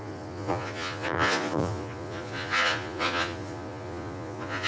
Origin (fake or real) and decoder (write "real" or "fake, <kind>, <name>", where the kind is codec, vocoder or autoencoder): fake, vocoder, Vocos